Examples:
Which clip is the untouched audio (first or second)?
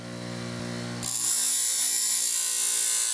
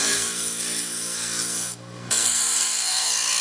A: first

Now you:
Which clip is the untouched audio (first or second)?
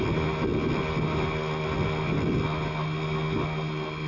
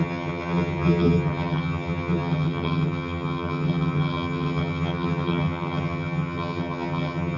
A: first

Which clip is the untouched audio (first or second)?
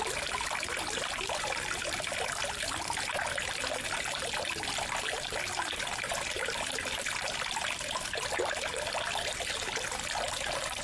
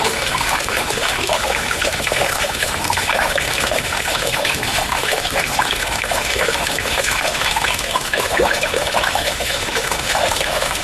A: first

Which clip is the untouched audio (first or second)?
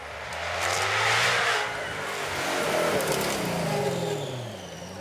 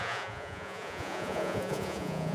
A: first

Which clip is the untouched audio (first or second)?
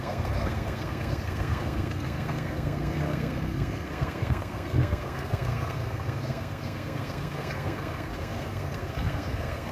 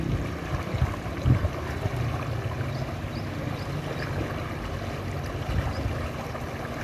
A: second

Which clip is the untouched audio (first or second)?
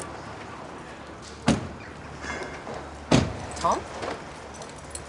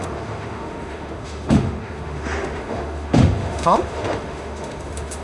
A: first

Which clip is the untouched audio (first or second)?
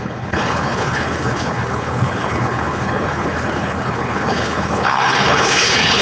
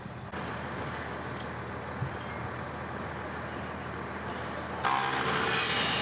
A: second